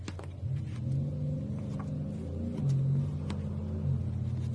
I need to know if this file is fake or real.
real